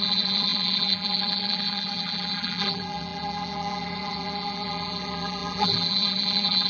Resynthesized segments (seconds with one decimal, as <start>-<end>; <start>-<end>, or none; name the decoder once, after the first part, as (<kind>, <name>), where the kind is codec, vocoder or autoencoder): 0.0-6.7 (vocoder, BigVGAN v2)

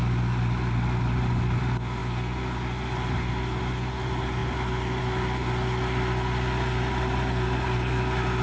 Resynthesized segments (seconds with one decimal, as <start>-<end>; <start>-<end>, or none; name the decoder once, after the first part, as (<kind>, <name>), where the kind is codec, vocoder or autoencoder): none

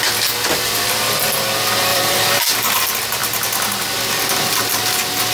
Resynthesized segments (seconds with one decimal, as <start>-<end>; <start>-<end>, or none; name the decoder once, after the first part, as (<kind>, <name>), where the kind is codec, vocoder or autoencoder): 1.9-2.5 (vocoder, BigVGAN v2)

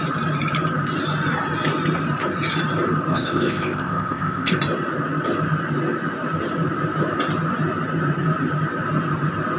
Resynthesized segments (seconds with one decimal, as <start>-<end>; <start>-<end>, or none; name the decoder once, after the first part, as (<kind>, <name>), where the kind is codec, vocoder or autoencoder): 3.1-4.6 (codec, ZipCodec)

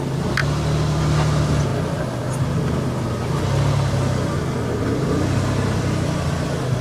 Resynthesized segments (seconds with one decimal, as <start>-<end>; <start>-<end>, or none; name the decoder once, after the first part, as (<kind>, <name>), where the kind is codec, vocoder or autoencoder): none